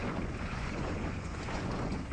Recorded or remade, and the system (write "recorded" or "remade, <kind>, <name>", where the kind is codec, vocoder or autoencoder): remade, vocoder, Vocos